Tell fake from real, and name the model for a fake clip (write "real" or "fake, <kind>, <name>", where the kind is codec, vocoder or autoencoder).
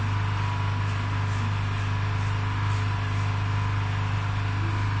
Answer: real